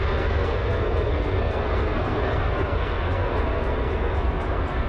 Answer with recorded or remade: remade